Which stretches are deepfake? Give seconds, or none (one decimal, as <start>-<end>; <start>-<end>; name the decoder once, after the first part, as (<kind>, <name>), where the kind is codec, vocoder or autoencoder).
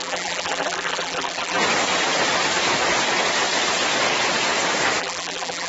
0.0-1.6 (vocoder, BigVGAN v2); 5.0-5.7